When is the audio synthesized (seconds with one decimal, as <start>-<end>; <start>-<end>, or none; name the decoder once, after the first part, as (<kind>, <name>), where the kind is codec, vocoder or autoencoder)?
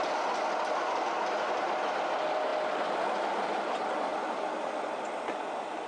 none